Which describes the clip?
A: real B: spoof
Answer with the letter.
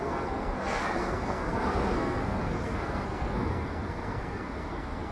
B